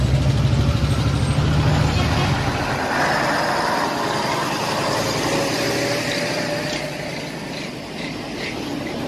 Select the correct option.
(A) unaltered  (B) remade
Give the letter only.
A